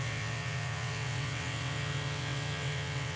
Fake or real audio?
fake